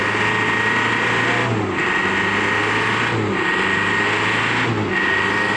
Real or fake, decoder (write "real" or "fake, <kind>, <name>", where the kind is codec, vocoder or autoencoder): real